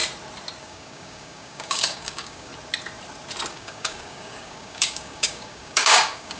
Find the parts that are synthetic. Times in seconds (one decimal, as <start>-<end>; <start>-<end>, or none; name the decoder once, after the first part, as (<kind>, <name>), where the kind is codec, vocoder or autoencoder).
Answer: 0.6-2.5 (codec, DAC); 3.5-6.4

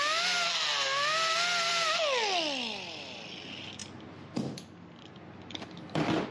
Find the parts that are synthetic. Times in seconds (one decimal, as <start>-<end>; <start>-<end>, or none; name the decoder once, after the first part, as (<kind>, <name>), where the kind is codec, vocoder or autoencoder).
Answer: none

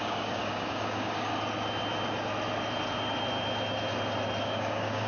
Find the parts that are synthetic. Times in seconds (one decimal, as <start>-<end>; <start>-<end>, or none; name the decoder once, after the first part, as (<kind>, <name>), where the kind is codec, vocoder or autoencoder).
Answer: 0.0-1.3 (codec, DAC); 4.4-5.1

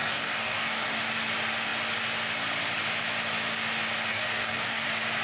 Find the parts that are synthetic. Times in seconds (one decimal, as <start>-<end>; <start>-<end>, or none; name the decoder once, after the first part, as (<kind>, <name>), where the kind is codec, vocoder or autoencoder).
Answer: 0.0-1.0 (codec, DAC); 4.1-4.8

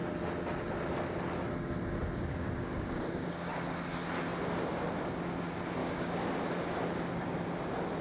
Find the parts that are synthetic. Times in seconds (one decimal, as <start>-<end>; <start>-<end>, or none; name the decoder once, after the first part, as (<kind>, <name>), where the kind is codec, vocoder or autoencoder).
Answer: 2.0-3.5 (codec, DAC); 5.8-6.3

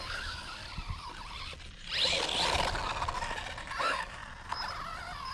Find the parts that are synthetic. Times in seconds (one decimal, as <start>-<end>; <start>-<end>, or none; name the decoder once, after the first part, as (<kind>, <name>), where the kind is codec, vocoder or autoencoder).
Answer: 0.0-0.6 (codec, DAC); 3.8-4.2